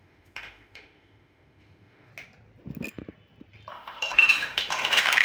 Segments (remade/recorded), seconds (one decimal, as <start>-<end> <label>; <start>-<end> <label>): 0.0-2.1 remade; 2.1-3.7 recorded; 3.7-5.2 remade